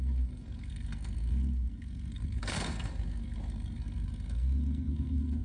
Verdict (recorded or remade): remade